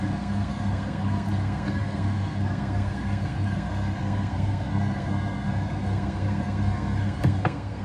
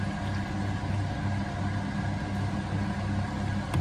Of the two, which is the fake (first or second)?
first